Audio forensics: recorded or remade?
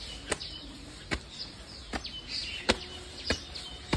recorded